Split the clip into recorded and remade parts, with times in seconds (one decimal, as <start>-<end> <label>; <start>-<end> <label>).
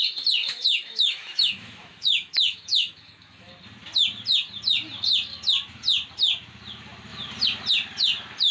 0.0-0.4 recorded; 0.4-3.5 remade; 3.5-8.5 recorded